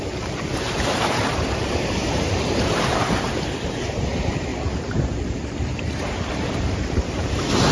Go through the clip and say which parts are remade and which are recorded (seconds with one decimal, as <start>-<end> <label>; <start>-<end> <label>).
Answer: 0.0-0.5 recorded; 0.5-4.1 remade; 4.1-4.5 recorded; 4.5-7.3 remade; 7.3-7.7 recorded